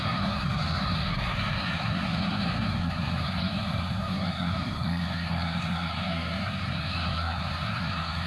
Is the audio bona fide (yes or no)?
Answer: no